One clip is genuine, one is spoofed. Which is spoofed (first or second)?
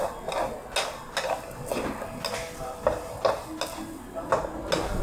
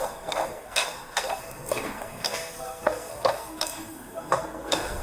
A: second